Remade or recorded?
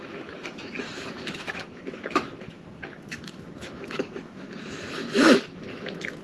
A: remade